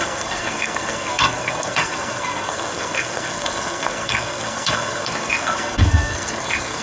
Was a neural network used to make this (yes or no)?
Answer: yes